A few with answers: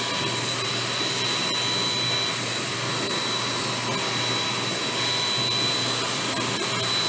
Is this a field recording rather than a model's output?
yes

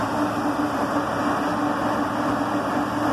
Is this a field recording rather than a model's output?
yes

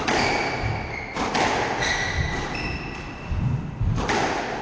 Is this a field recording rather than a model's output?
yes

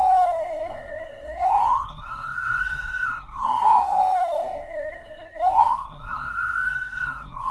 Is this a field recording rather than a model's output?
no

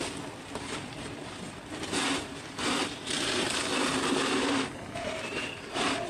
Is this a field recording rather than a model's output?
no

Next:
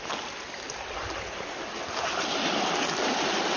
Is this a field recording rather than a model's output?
yes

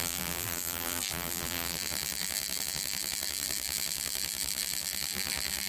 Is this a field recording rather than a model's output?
no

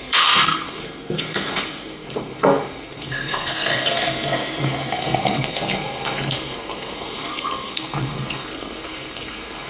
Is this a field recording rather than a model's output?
no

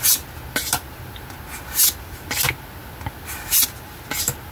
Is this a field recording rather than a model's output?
yes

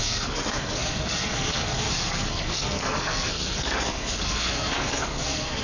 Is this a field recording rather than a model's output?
no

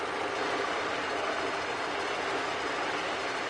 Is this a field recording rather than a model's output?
yes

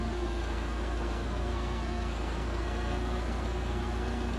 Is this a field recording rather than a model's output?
no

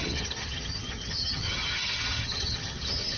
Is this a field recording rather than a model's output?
no